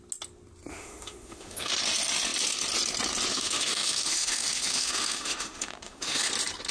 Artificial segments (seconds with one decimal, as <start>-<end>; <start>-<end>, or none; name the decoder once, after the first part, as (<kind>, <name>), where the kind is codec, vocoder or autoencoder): 0.7-1.7 (autoencoder, DAC-VAE); 3.3-6.3